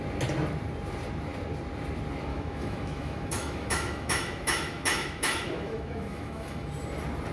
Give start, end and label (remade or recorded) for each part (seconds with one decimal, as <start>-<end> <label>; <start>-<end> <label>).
0.0-2.3 recorded; 2.3-6.7 remade; 6.7-7.3 recorded

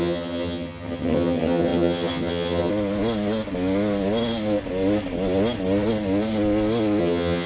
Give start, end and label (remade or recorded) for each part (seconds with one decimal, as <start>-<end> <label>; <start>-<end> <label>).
0.0-2.7 remade; 2.7-7.0 recorded; 7.0-7.5 remade